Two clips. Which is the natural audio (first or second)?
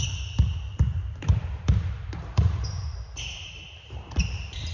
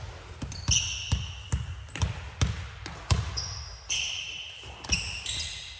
second